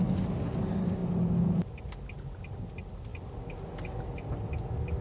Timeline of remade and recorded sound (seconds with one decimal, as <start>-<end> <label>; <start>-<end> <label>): 0.0-5.0 recorded